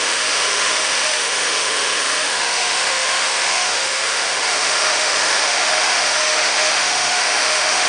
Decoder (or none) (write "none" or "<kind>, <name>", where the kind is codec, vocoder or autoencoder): autoencoder, DAC-VAE